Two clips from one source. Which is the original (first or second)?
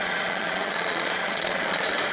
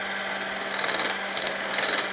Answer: second